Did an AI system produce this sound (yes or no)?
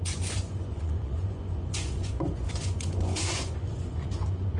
yes